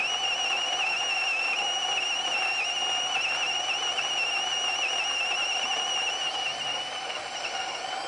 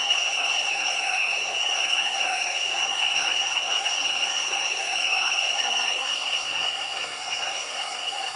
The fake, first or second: second